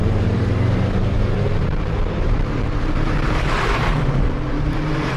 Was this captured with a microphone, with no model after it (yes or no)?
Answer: no